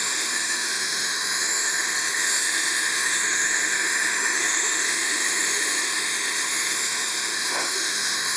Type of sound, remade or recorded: remade